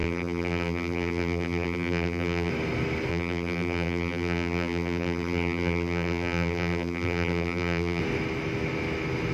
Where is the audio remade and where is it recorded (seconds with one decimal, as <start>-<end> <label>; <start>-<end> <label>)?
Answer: 0.0-2.5 remade; 2.5-3.1 recorded; 3.1-8.0 remade; 8.0-9.3 recorded